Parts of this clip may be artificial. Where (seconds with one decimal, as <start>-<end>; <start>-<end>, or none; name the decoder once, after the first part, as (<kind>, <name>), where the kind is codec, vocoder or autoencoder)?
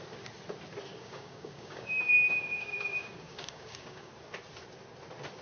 0.9-4.1 (codec, DAC)